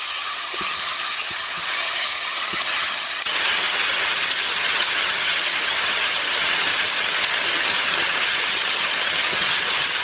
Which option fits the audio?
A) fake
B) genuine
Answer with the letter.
A